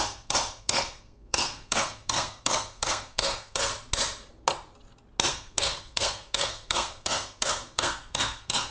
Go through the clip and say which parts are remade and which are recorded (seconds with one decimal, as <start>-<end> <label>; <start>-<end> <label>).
0.0-3.7 remade; 3.7-5.3 recorded; 5.3-8.7 remade